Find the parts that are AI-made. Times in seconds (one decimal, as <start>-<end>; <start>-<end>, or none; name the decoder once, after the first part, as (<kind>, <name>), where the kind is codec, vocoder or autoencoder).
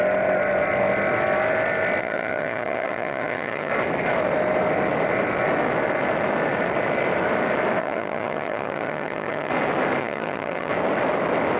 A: 2.0-3.7 (vocoder, HiFi-GAN); 7.8-9.5; 10.0-10.7